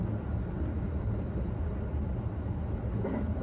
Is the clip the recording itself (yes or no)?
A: yes